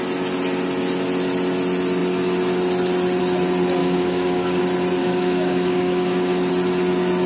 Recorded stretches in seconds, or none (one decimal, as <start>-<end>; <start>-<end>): 0.0-3.8; 4.6-5.0; 6.5-7.3